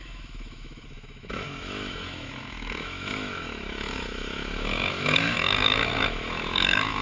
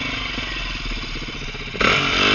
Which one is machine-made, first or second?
first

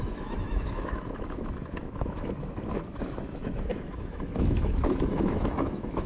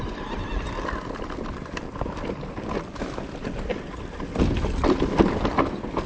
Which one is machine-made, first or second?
first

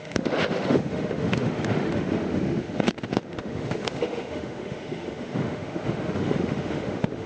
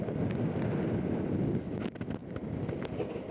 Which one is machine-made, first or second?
first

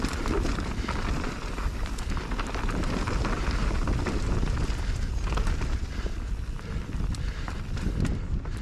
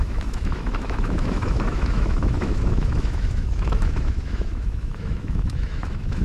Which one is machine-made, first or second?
second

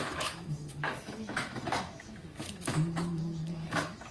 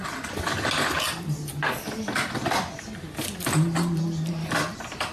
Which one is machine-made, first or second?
first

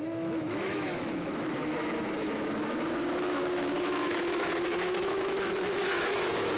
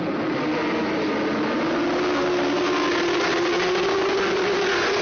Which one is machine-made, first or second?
first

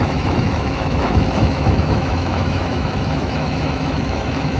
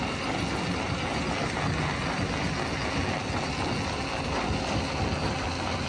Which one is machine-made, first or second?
first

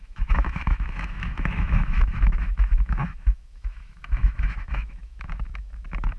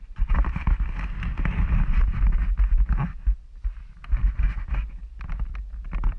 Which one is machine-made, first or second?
first